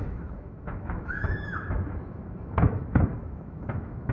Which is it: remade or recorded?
remade